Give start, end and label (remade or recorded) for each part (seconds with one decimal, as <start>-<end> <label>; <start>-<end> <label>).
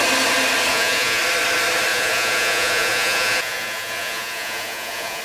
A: 0.0-0.7 recorded; 0.7-1.2 remade; 1.2-1.9 recorded; 1.9-5.2 remade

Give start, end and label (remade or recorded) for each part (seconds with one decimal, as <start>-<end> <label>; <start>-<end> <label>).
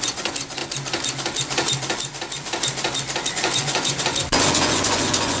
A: 0.0-0.6 remade; 0.6-3.3 recorded; 3.3-5.4 remade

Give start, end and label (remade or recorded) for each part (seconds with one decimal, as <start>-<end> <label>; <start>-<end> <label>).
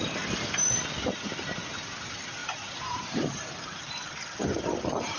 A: 0.0-2.4 recorded; 2.4-3.8 remade; 3.8-5.2 recorded